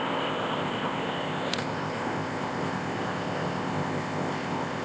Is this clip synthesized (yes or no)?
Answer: yes